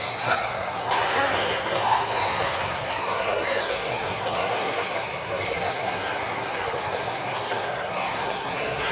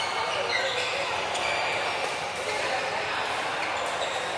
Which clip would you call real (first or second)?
second